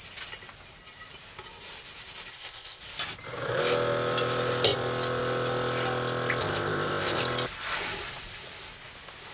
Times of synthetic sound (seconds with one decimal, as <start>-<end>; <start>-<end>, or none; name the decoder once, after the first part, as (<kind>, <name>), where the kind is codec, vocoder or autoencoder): 2.3-2.8 (codec, ZipCodec); 6.4-7.2